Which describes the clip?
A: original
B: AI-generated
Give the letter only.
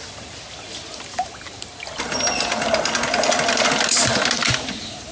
A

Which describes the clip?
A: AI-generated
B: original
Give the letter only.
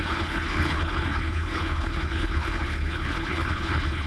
A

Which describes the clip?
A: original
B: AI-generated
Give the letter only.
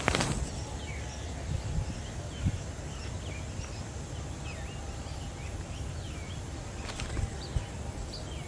A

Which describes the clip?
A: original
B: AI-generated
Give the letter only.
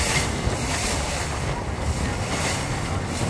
A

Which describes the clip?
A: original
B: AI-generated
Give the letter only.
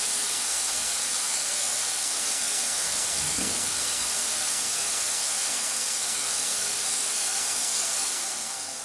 B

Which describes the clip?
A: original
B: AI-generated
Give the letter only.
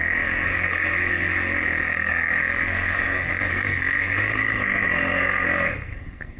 B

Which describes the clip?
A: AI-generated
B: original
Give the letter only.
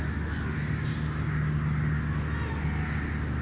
B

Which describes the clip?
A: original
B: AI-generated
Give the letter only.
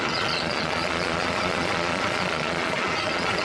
B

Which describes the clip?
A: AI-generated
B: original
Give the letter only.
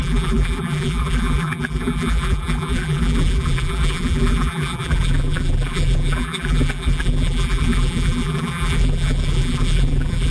A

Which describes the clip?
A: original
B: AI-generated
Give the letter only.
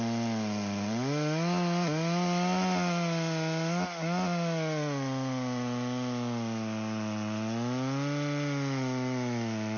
A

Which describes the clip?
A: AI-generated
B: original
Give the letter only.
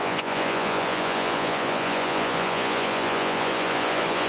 A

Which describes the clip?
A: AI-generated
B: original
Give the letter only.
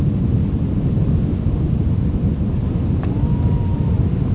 B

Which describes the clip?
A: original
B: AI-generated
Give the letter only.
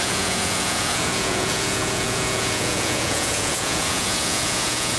B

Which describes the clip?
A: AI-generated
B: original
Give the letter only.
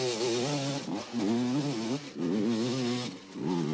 B